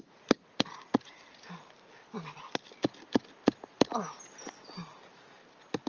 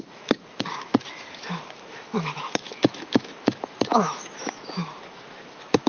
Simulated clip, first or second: second